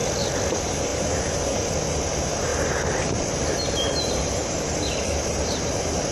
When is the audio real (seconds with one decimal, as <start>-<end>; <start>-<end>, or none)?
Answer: 0.0-0.5